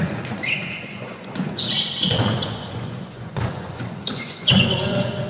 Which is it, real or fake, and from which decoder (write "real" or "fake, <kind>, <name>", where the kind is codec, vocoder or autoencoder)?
fake, vocoder, Vocos